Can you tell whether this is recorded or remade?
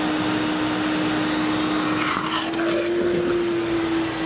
recorded